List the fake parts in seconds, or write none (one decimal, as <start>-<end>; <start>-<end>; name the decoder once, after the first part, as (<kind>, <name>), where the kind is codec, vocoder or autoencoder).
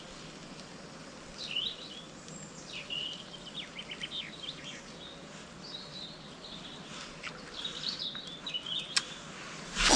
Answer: none